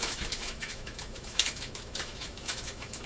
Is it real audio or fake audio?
fake